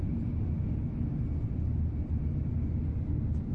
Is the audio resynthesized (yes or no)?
no